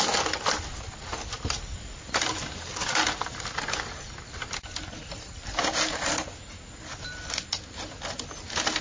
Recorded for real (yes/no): yes